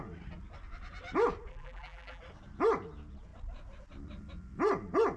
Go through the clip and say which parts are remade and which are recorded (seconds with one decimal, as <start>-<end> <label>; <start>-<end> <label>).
0.0-1.5 recorded; 1.5-2.2 remade; 2.2-5.2 recorded